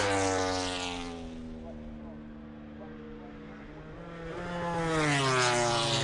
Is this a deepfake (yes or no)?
no